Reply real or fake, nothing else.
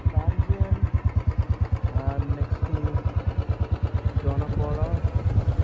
real